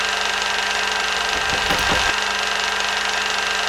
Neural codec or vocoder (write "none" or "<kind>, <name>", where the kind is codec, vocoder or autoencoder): none